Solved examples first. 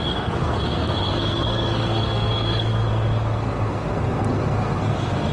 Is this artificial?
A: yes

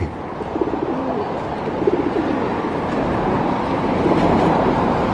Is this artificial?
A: no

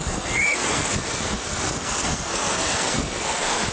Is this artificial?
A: yes